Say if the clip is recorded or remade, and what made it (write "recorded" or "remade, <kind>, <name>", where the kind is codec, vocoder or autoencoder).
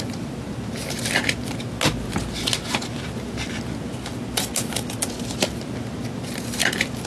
recorded